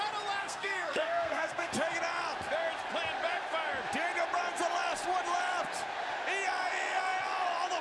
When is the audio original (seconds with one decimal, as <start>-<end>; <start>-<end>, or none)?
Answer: 0.0-0.4; 1.7-7.8